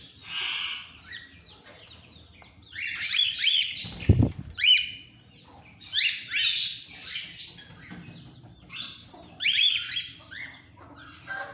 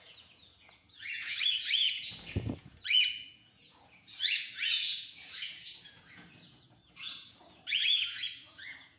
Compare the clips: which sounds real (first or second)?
first